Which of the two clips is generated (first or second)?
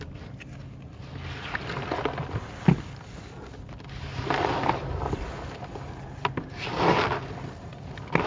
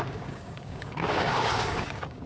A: second